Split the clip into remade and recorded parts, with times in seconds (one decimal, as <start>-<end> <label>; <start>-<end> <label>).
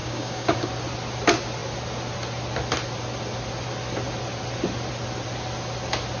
0.0-0.7 remade; 0.7-6.2 recorded